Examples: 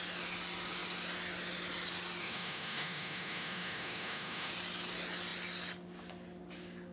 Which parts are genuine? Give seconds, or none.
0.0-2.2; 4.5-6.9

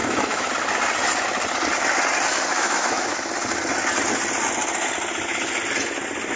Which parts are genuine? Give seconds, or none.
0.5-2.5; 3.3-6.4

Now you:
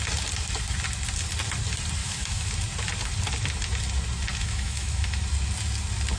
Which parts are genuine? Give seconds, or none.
0.0-2.0; 2.5-4.3; 5.2-6.2